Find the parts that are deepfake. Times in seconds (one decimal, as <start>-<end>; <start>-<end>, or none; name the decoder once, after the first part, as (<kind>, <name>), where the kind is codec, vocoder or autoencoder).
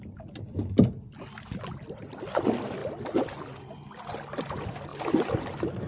none